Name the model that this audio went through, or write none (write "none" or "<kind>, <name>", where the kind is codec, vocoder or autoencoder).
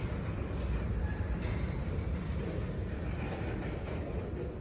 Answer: none